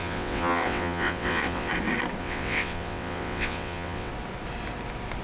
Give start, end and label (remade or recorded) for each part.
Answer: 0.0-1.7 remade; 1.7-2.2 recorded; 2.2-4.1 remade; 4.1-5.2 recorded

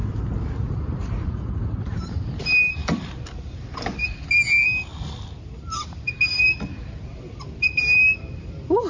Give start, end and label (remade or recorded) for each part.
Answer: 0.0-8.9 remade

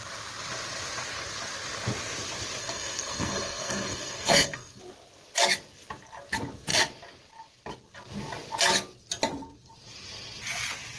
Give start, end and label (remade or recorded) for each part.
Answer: 0.0-2.6 recorded; 2.6-4.8 remade; 4.8-11.0 recorded

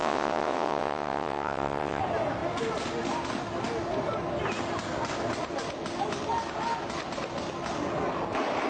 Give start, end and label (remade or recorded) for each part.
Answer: 0.0-2.0 remade; 2.0-8.7 recorded

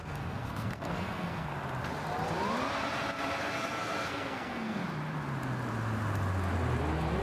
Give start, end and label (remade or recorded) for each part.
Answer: 0.0-1.5 remade; 1.5-3.4 recorded; 3.4-4.8 remade; 4.8-7.2 recorded